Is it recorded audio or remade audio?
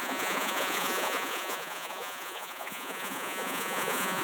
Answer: remade